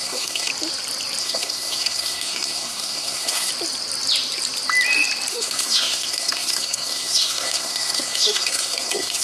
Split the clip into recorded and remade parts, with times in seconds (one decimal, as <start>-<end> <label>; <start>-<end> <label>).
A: 0.0-0.5 remade; 0.5-1.2 recorded; 1.2-3.5 remade; 3.5-5.3 recorded; 5.3-9.2 remade